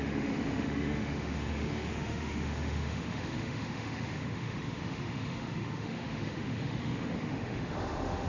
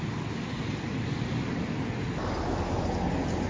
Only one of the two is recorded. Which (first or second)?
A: second